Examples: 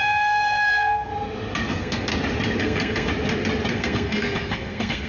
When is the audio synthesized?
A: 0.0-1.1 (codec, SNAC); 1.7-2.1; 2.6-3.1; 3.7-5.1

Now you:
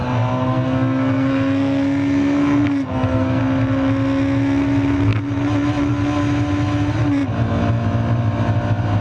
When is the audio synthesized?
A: 0.0-3.4 (codec, SNAC)

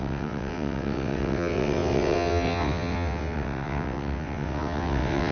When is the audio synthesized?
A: 0.0-5.3 (vocoder, WaveNeXt)

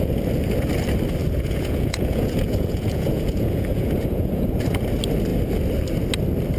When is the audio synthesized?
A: 1.2-4.8 (vocoder, Vocos)

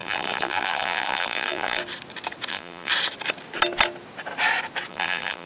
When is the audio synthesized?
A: 0.0-1.8 (vocoder, BigVGAN v2); 2.5-2.9; 4.9-5.5

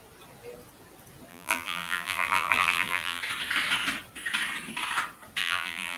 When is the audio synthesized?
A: 1.3-3.2 (vocoder, BigVGAN v2); 5.4-6.0

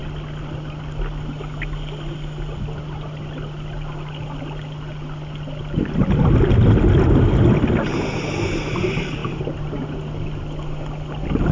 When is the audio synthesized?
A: none

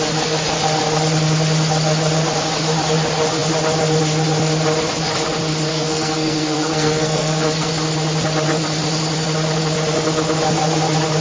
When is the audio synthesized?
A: 5.7-7.7 (codec, SNAC)